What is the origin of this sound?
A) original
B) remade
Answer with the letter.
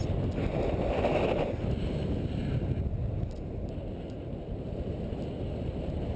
A